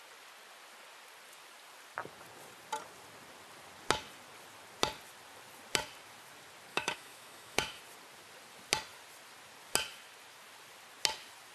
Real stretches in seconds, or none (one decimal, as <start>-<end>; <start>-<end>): 0.0-6.7; 7.8-11.5